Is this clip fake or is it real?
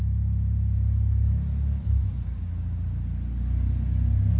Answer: real